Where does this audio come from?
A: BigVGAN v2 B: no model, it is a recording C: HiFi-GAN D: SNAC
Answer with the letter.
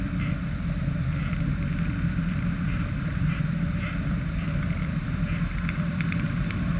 A